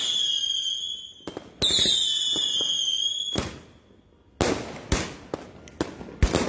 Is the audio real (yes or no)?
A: yes